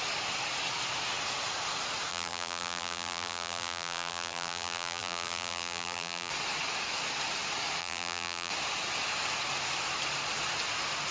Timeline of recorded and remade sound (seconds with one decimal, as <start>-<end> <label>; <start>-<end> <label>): 0.0-2.1 recorded; 2.1-6.3 remade; 6.3-7.8 recorded; 7.8-8.5 remade; 8.5-11.1 recorded